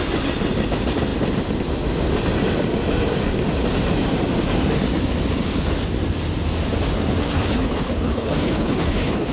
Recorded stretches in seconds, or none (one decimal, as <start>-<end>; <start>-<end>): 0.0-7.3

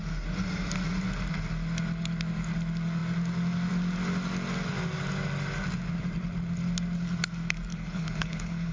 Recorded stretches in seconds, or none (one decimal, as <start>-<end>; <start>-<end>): 0.0-7.7

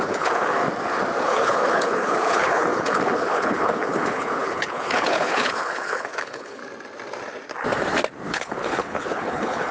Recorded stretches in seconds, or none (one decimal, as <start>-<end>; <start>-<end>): 0.6-1.2; 6.6-8.3

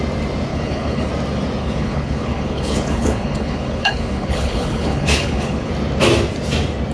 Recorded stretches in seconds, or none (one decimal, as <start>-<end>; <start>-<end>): 0.0-0.5; 1.1-1.6; 5.7-6.9

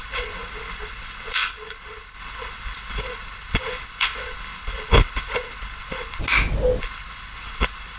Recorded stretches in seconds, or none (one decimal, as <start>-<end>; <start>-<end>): 6.2-6.8

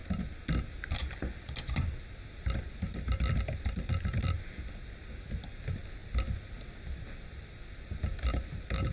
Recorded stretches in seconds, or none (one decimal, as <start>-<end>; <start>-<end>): 0.0-8.9

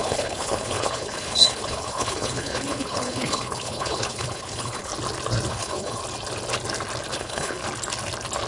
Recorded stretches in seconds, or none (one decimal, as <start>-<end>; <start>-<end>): 4.9-5.5; 6.0-7.1; 7.6-8.5

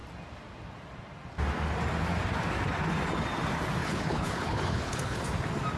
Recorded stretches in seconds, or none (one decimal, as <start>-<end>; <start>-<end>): 0.0-3.8; 5.2-5.8